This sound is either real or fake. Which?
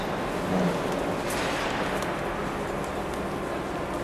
real